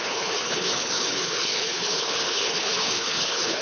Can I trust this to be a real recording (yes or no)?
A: no